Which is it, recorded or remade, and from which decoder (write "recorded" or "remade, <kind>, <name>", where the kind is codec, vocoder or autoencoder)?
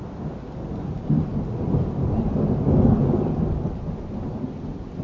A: recorded